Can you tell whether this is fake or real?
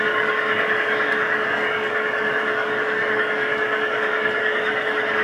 fake